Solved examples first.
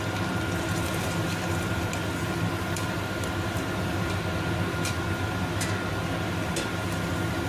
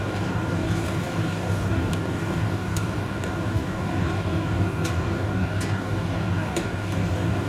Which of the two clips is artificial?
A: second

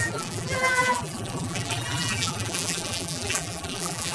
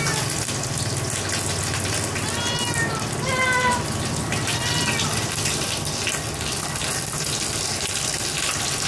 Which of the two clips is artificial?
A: first